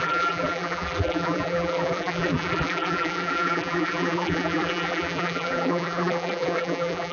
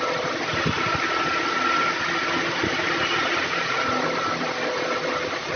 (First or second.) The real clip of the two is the second